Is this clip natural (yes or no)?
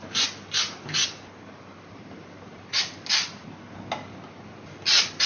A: yes